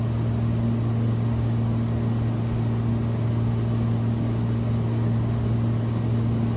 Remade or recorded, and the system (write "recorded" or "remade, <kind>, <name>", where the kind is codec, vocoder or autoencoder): recorded